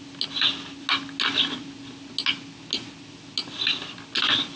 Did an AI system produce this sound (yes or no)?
no